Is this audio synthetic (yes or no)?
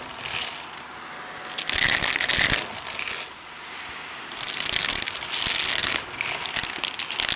no